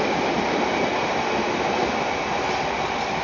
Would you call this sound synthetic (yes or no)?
no